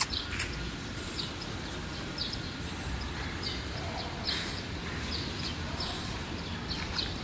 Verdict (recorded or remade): recorded